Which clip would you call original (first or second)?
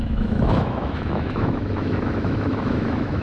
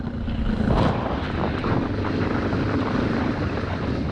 second